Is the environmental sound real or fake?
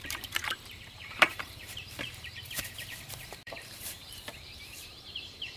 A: fake